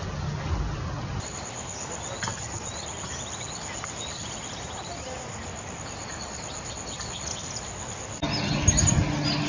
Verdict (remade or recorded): recorded